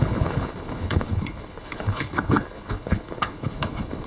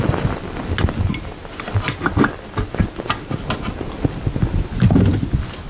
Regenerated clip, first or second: first